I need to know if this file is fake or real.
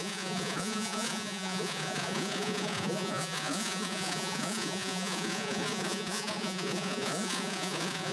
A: fake